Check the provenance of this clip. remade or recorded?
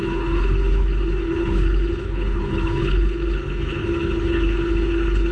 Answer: remade